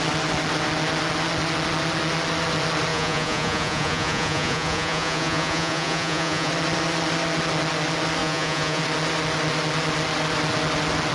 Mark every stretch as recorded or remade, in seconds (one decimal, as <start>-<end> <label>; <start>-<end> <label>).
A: 0.0-2.9 recorded; 2.9-6.5 remade; 6.5-8.2 recorded; 8.2-8.8 remade; 8.8-11.1 recorded